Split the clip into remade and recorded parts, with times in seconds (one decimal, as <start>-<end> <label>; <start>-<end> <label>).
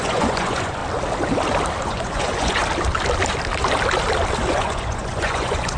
0.0-0.8 remade; 0.8-1.8 recorded; 1.8-2.6 remade; 2.6-4.5 recorded; 4.5-5.8 remade